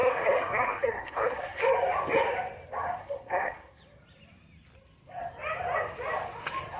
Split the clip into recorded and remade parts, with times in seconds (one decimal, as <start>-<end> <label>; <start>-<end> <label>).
0.0-1.6 remade; 1.6-3.0 recorded; 3.0-3.8 remade; 3.8-6.8 recorded